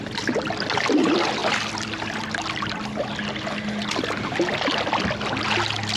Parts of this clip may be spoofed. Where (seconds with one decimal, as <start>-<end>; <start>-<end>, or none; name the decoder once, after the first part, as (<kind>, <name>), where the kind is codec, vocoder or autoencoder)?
none